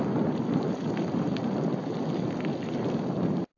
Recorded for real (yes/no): yes